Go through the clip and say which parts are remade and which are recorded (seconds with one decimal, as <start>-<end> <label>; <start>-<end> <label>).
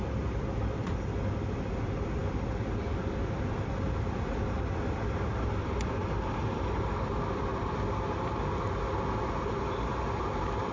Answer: 0.0-10.7 recorded